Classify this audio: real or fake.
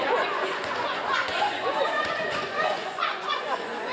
fake